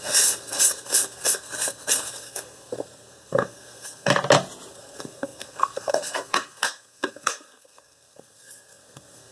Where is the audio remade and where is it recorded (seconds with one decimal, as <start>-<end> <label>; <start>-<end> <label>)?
0.0-4.1 remade; 4.1-4.7 recorded; 4.7-9.3 remade